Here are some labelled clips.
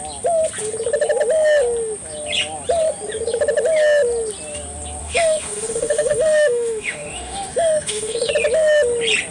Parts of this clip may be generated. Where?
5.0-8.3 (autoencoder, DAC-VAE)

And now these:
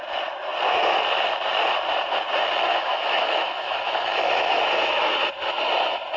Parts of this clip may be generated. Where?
2.7-5.1 (autoencoder, DAC-VAE)

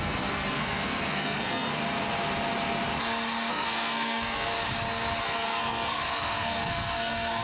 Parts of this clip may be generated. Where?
0.0-1.7 (codec, SNAC); 3.5-4.5; 5.2-7.4

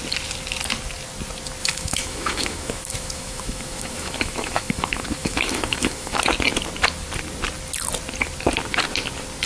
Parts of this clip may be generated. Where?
1.6-6.2 (autoencoder, DAC-VAE)

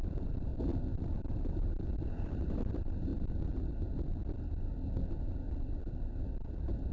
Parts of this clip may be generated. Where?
0.0-0.5 (vocoder, BigVGAN v2); 1.2-3.1; 6.2-6.9

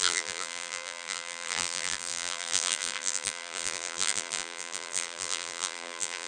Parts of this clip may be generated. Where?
0.0-6.3 (vocoder, BigVGAN v2)

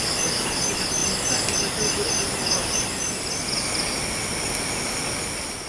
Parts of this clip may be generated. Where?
none